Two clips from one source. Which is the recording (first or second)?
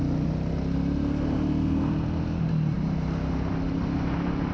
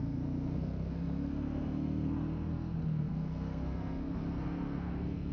first